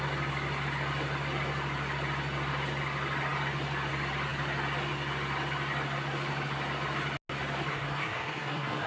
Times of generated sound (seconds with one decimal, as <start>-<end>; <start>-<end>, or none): 7.7-8.9